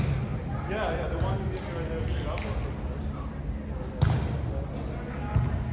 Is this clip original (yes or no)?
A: yes